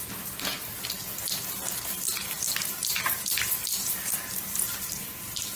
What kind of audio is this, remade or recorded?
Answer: recorded